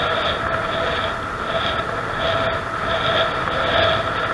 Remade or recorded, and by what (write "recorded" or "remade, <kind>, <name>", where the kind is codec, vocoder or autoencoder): recorded